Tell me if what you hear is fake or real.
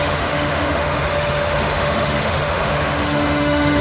fake